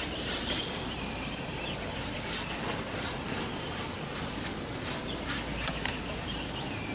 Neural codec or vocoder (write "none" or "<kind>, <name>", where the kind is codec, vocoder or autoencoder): none